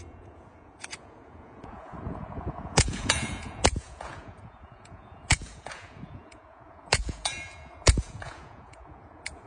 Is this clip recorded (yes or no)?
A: no